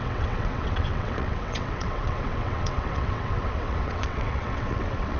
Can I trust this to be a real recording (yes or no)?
no